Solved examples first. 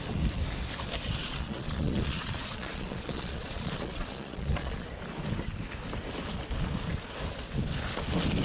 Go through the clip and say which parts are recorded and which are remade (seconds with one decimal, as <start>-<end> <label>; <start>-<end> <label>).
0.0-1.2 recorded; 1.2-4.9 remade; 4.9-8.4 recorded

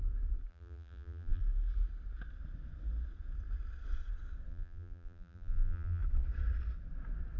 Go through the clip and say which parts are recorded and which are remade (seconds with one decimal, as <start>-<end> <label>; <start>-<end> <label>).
0.0-0.5 recorded; 0.5-1.4 remade; 1.4-4.5 recorded; 4.5-6.0 remade; 6.0-7.4 recorded

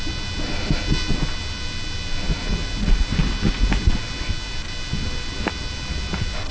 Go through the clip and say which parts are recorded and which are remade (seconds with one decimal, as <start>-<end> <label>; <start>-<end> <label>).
0.0-6.5 recorded

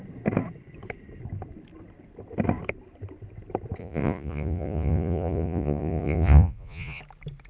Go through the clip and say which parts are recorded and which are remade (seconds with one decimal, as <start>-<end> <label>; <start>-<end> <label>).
0.0-3.8 recorded; 3.8-7.0 remade; 7.0-7.5 recorded

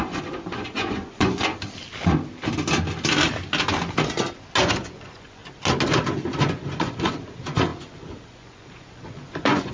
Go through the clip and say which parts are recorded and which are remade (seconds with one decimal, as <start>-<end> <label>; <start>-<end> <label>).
0.0-1.5 remade; 1.5-4.6 recorded; 4.6-5.4 remade; 5.4-6.4 recorded; 6.4-9.7 remade